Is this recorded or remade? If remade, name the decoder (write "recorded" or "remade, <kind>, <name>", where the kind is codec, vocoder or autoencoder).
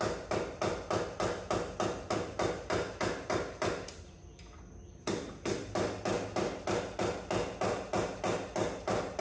recorded